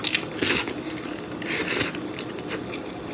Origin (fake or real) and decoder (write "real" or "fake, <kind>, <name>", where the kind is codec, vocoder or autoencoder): real